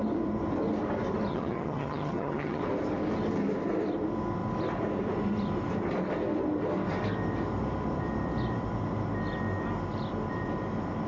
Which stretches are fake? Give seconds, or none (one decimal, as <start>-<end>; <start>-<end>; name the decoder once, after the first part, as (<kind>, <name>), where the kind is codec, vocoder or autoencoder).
1.3-2.6 (vocoder, HiFi-GAN)